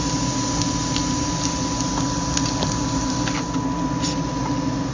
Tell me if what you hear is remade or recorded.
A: recorded